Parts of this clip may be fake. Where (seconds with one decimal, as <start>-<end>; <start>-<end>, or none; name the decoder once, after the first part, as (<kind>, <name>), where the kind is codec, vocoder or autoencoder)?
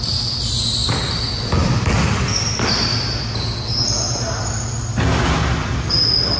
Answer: 4.9-5.9 (vocoder, BigVGAN v2)